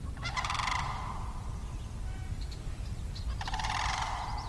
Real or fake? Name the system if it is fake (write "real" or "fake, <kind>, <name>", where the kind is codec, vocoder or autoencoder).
real